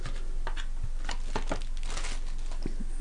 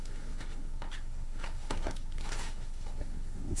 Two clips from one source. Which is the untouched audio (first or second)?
first